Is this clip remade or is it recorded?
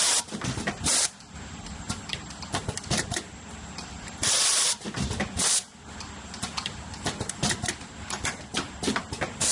remade